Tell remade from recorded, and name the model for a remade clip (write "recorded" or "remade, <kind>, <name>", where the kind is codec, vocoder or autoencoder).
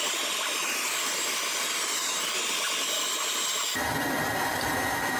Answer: recorded